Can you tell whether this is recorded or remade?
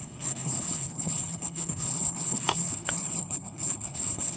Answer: remade